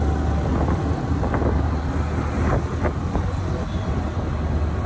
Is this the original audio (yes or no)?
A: yes